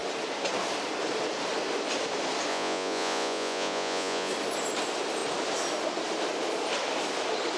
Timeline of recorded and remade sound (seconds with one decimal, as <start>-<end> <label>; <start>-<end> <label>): 0.0-2.5 recorded; 2.5-4.3 remade; 4.3-7.6 recorded